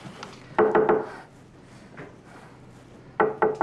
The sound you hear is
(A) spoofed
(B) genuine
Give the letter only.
B